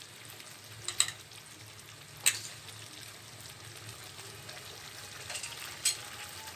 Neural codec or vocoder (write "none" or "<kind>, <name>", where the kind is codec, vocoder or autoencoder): none